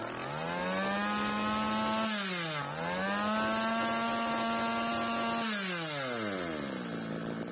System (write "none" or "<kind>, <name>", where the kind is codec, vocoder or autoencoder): none